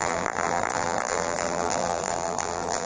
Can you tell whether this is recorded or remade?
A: remade